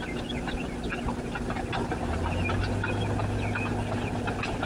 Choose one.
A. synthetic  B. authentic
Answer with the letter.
B